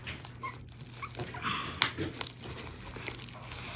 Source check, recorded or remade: recorded